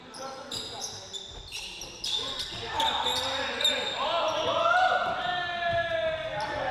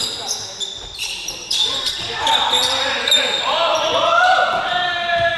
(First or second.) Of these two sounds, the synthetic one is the second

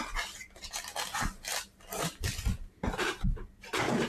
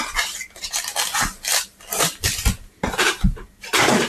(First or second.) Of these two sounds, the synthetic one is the second